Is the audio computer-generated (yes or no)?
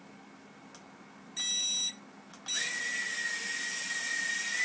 no